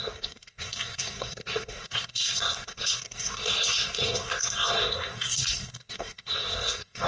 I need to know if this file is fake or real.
fake